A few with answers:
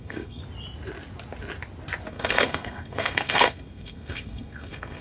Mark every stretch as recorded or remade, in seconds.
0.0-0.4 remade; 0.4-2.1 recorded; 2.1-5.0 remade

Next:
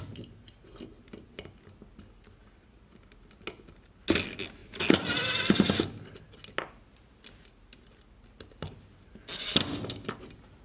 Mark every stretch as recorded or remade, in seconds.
0.0-10.6 recorded

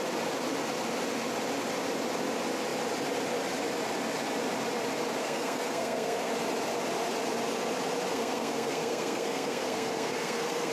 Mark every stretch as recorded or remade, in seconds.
0.0-5.2 recorded; 5.2-6.3 remade; 6.3-8.1 recorded; 8.1-10.7 remade